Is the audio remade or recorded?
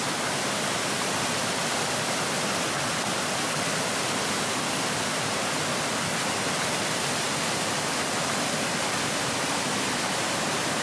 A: recorded